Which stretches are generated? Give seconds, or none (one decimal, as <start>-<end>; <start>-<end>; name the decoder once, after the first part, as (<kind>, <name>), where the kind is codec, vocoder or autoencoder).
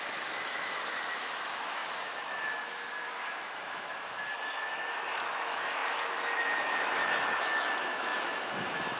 0.0-9.0 (autoencoder, DAC-VAE)